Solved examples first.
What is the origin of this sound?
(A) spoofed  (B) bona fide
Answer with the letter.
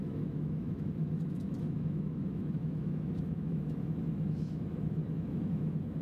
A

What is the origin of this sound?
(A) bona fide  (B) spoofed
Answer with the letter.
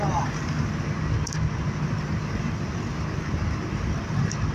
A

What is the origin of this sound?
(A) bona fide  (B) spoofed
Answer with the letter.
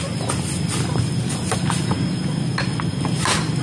A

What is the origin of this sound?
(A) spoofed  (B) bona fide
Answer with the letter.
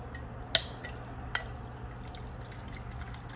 B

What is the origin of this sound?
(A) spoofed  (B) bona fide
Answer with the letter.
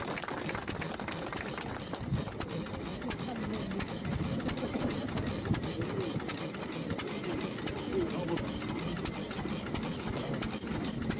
B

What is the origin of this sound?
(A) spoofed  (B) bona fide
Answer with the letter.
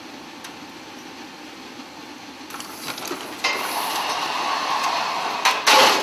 B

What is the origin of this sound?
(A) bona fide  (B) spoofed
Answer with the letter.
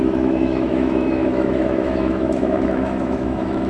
B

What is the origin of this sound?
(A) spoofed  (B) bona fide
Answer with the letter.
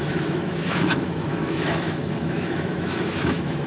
A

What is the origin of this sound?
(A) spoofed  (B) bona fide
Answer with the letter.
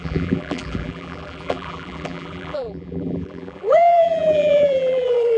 A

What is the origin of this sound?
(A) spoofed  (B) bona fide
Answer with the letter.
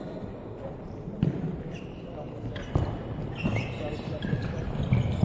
B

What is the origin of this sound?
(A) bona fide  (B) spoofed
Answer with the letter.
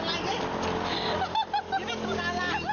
A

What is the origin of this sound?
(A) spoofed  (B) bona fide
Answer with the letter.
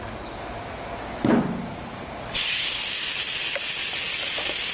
B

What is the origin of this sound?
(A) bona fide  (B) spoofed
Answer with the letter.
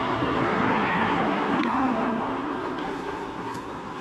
B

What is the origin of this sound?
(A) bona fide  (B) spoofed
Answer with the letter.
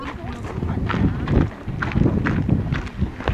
A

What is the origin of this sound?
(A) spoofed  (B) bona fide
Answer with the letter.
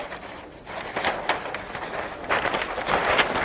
B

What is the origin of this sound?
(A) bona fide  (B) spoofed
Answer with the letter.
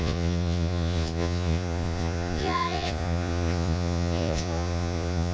B